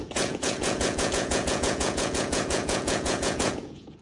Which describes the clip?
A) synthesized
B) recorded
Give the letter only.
A